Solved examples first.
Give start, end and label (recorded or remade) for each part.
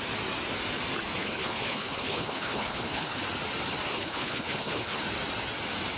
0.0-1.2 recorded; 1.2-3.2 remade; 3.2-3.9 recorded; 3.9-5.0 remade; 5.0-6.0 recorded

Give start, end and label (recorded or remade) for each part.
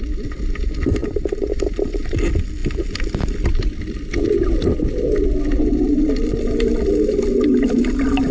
0.0-1.0 recorded; 1.0-2.2 remade; 2.2-8.3 recorded